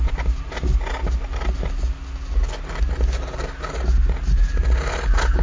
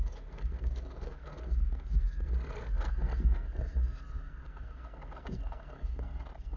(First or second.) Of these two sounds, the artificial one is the second